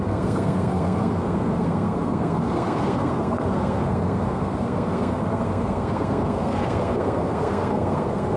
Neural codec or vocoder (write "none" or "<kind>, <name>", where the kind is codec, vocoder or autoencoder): codec, SNAC